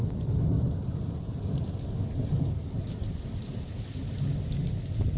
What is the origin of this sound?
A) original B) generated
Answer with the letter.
A